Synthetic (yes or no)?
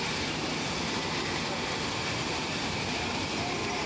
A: no